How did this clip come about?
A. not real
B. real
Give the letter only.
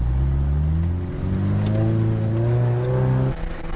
B